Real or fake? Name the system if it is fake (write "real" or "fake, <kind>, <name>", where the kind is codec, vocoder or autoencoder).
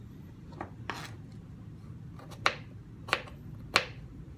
real